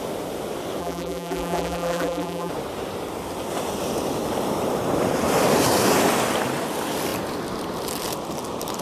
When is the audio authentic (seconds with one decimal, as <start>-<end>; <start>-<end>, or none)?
0.0-0.8; 2.5-8.8